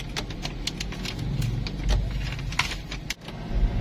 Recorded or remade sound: recorded